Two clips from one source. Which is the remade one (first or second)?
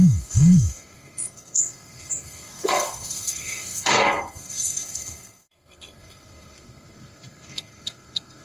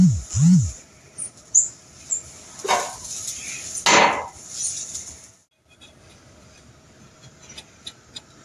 first